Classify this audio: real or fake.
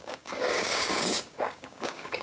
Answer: fake